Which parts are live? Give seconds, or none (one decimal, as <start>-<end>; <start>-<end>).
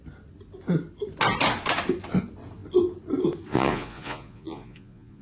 0.0-3.5